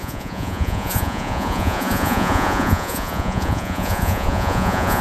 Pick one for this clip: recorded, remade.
remade